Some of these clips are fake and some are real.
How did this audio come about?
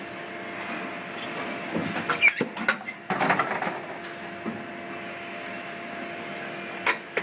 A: real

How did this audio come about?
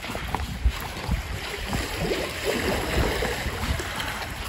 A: real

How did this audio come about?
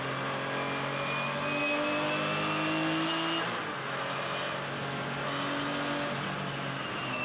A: real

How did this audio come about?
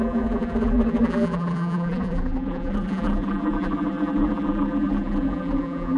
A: fake